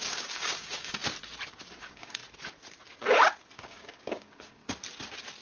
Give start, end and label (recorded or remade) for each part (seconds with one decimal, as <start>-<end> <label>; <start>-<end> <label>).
0.0-1.0 remade; 1.0-1.8 recorded; 1.8-2.2 remade; 2.2-3.6 recorded; 3.6-4.6 remade; 4.6-5.4 recorded